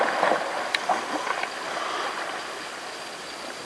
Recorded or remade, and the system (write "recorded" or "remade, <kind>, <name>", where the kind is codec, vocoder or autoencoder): recorded